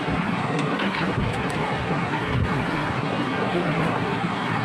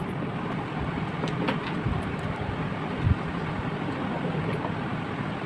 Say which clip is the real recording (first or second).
second